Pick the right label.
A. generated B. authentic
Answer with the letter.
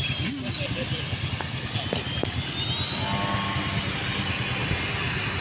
B